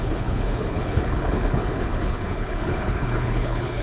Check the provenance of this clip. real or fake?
fake